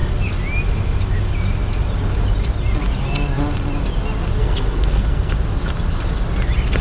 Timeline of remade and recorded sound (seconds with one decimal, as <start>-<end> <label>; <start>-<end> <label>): 0.0-4.4 recorded; 4.4-5.3 remade; 5.3-6.8 recorded